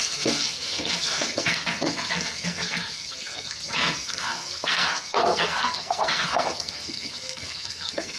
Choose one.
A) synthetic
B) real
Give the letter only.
A